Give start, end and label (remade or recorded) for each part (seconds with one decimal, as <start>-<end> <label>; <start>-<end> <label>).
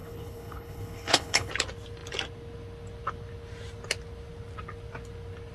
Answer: 0.0-1.5 remade; 1.5-5.5 recorded